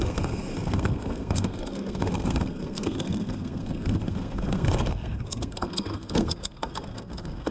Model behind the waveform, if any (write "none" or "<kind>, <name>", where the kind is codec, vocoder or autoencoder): codec, SNAC